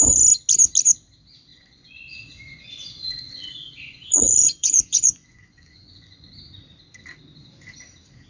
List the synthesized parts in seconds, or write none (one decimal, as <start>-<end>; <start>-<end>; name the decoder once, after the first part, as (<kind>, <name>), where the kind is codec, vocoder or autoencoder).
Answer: 1.5-6.3 (vocoder, Vocos)